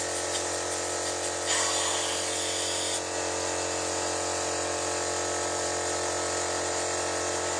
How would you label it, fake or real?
fake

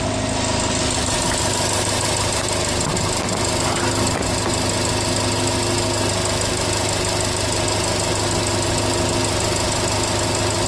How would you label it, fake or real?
real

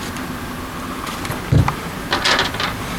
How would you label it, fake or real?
fake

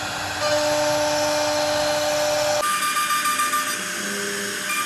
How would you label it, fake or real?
real